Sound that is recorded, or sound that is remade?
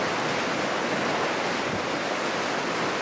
recorded